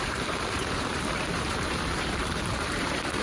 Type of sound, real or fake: fake